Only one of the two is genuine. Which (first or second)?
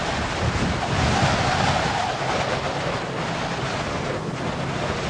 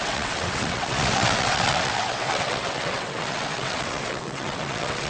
first